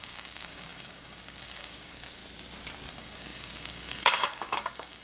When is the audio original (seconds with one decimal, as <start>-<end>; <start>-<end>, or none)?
2.2-2.9